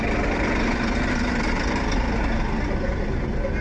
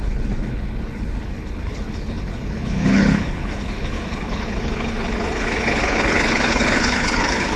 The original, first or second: first